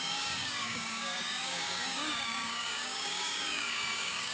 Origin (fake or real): fake